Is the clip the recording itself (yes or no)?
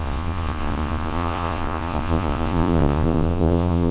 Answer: no